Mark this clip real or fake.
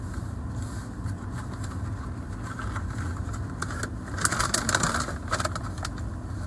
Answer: real